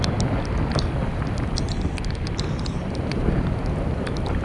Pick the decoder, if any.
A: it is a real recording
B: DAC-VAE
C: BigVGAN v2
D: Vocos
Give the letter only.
A